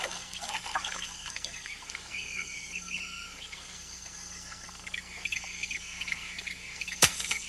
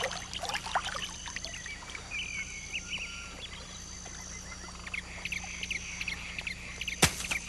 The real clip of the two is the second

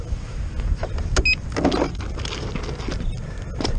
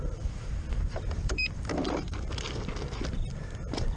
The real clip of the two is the first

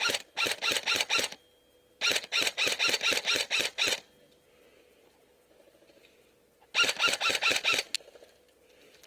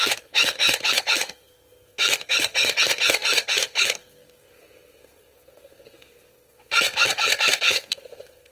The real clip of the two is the first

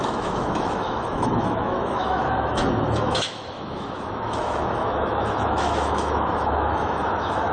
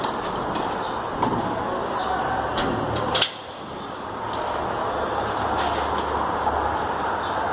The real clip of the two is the second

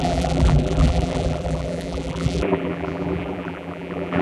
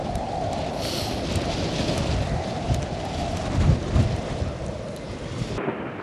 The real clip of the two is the second